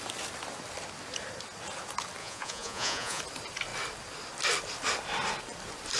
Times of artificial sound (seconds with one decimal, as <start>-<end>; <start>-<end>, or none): 2.2-3.2